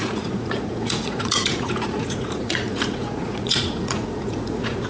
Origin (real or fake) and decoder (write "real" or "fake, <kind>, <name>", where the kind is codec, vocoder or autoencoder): fake, vocoder, Vocos